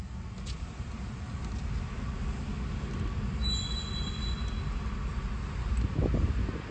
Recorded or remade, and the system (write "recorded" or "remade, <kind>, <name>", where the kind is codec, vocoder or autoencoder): recorded